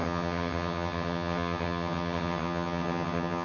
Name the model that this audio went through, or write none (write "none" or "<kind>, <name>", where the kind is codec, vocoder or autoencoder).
vocoder, HiFi-GAN